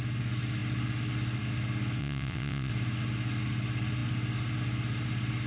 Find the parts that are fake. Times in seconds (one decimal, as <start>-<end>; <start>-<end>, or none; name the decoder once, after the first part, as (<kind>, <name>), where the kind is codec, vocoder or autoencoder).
2.0-2.7 (vocoder, WaveNeXt)